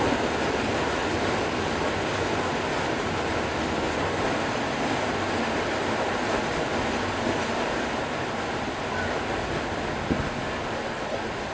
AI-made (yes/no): no